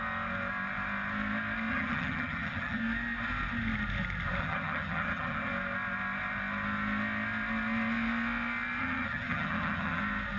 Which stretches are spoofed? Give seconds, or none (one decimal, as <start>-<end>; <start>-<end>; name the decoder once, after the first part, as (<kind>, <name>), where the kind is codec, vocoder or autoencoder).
1.7-2.8 (vocoder, HiFi-GAN); 4.4-5.5; 8.8-10.0